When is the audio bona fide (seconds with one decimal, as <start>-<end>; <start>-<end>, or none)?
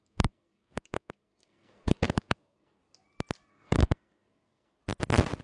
2.8-3.5; 4.8-5.4